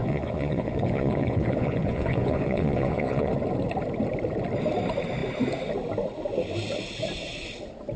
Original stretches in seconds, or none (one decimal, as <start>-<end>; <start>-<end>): 3.3-8.0